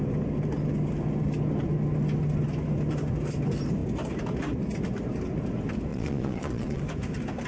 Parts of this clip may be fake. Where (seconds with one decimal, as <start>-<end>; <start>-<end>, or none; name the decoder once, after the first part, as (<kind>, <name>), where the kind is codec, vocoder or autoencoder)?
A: 5.9-6.8 (vocoder, Vocos)